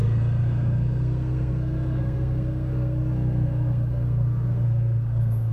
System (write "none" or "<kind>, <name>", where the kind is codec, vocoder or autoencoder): codec, SNAC